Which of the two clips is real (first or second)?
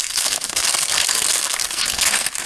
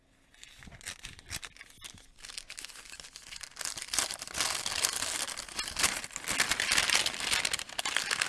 second